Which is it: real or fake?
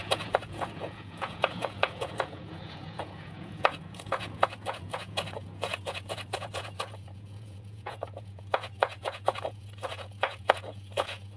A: fake